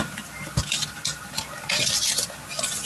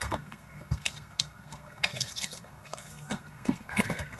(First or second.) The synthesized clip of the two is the second